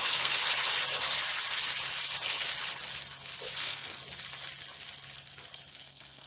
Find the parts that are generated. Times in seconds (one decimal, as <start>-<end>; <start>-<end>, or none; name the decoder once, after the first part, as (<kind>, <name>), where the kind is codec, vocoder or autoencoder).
0.0-0.4 (codec, SNAC); 3.6-4.0; 5.7-6.3